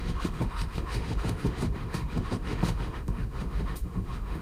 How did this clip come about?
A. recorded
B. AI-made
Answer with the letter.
B